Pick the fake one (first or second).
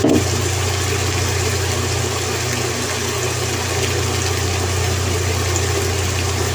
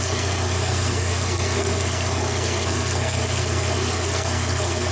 second